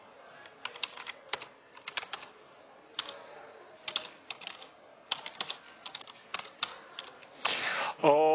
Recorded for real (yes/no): yes